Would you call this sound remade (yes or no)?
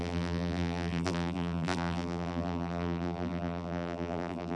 yes